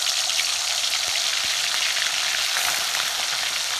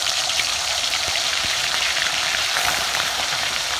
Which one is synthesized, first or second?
second